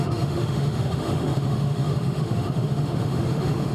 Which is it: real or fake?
fake